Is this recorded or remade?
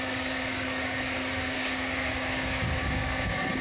remade